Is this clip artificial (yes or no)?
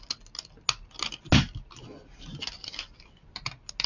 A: no